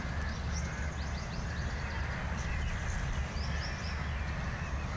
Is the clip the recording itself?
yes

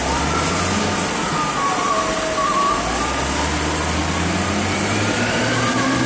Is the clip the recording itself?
yes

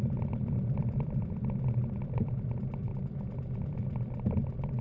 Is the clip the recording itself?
yes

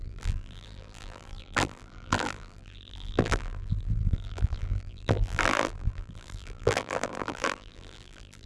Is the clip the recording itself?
no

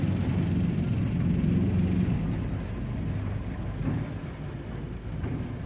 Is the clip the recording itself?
yes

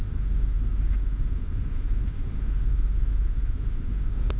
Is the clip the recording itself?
no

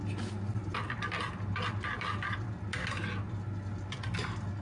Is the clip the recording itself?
yes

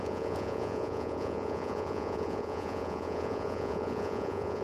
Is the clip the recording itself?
no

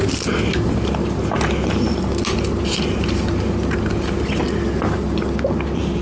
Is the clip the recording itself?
yes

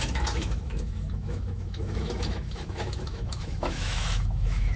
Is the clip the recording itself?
no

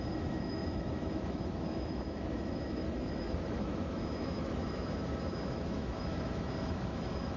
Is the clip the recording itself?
no